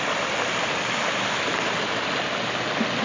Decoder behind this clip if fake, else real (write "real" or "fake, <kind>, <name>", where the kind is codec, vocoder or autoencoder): real